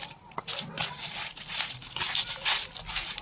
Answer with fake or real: real